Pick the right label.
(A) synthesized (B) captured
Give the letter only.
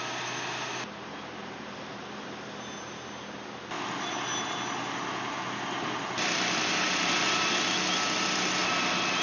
B